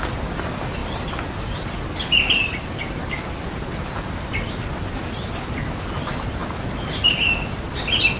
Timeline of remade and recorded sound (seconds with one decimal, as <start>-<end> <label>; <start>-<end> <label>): 0.0-2.4 recorded; 2.4-4.5 remade; 4.5-8.2 recorded